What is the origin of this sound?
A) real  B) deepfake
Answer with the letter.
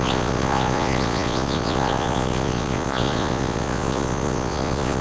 B